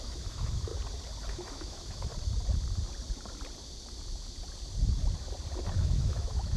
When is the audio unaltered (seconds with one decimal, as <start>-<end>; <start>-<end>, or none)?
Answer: 0.7-1.3; 2.1-5.7